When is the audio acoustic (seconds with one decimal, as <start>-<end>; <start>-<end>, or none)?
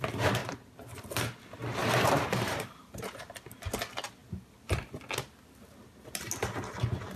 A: 0.0-0.4; 1.0-1.8; 3.3-7.2